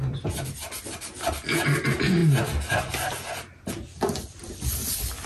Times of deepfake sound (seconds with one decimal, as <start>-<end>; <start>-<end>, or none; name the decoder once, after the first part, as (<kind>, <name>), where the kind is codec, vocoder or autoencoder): none